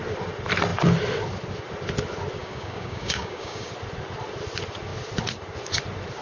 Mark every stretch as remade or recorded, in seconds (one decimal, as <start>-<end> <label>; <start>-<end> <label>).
0.0-2.4 recorded; 2.4-3.7 remade; 3.7-6.2 recorded